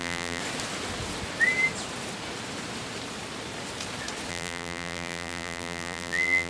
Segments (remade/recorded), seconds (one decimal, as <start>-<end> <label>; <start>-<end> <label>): 0.0-0.4 remade; 0.4-4.3 recorded; 4.3-6.5 remade